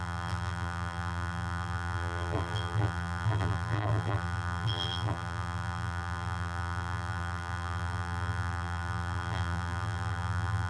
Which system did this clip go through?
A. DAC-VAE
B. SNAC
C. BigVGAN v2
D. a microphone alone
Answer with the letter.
C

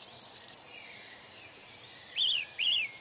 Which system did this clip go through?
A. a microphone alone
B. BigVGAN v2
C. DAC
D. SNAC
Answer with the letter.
B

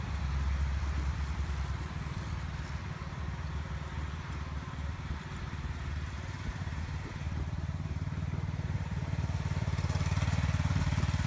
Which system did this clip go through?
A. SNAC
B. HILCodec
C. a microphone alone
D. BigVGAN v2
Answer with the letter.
D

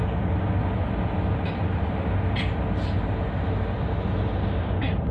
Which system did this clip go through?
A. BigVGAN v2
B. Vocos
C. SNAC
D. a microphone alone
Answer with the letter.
D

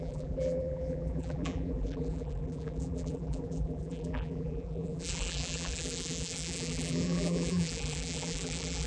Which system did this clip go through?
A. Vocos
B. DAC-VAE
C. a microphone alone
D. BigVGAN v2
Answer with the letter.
D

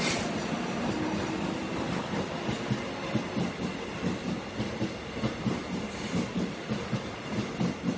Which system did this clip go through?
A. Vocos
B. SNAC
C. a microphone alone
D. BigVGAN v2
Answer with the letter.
C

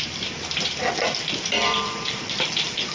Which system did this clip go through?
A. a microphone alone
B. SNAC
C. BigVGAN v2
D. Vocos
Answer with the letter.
C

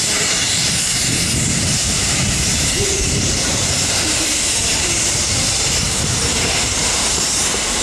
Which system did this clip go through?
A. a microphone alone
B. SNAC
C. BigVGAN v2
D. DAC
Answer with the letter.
C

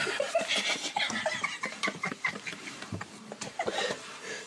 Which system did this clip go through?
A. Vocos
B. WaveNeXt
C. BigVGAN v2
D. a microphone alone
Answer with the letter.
C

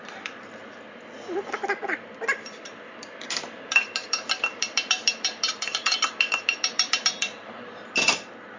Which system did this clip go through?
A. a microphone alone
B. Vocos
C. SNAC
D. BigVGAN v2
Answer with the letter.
D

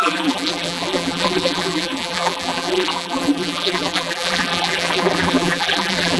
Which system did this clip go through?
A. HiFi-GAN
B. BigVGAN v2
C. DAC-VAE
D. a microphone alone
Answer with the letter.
B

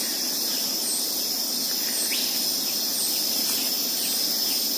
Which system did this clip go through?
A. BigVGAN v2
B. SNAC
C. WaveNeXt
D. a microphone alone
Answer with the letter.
D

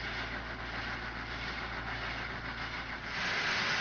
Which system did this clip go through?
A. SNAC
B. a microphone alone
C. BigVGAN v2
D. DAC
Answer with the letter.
B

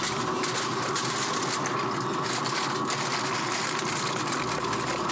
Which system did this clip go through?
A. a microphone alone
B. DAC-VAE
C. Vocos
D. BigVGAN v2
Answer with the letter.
A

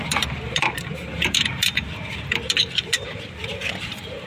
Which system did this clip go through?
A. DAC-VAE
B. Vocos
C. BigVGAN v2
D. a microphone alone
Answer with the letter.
C